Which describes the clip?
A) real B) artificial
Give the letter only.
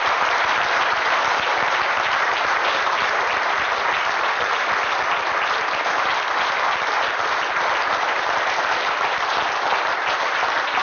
A